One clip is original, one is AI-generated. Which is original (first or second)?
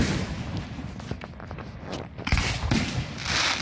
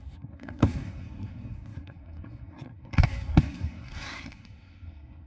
first